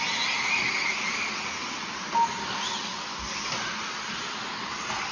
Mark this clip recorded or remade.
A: recorded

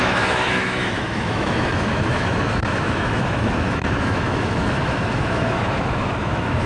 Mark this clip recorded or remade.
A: remade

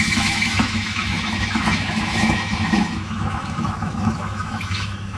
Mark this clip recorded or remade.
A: remade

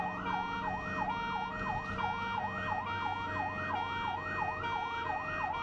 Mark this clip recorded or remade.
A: recorded